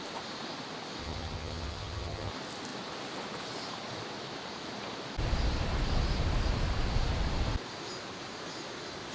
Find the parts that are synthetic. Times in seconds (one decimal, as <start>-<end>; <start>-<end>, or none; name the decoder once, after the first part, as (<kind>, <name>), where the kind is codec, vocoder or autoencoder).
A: 1.0-2.3 (vocoder, HiFi-GAN)